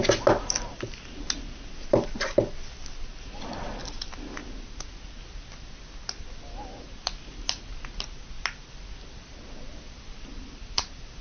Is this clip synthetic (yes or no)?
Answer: no